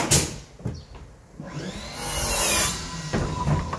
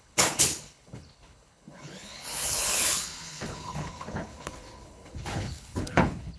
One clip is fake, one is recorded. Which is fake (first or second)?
second